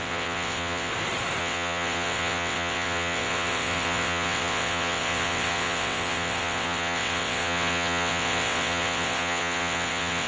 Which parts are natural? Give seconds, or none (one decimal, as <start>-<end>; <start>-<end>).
0.9-1.4